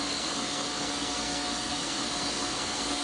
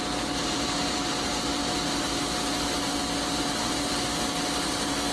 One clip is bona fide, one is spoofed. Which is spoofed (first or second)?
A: first